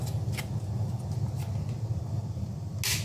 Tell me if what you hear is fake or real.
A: real